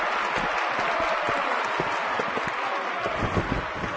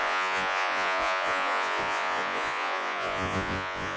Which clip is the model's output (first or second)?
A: second